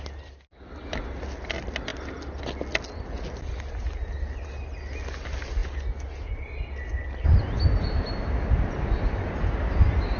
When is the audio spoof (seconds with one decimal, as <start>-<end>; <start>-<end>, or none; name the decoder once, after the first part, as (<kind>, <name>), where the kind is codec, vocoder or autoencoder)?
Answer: none